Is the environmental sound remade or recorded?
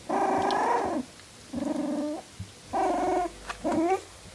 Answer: recorded